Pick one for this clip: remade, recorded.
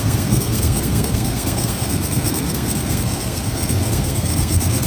remade